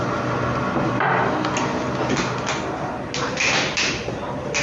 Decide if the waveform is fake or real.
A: real